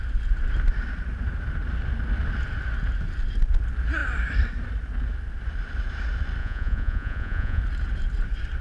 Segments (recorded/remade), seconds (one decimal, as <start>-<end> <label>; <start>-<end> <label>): 0.0-6.4 recorded; 6.4-7.6 remade; 7.6-8.6 recorded